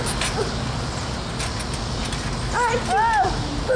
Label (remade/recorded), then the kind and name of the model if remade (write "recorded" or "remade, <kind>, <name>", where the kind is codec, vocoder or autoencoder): recorded